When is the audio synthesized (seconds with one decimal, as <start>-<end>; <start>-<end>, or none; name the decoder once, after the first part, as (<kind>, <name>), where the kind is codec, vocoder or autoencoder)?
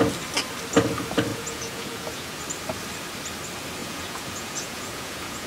1.3-2.4 (vocoder, Vocos); 3.8-5.5